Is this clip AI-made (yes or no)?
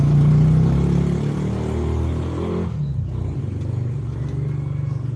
no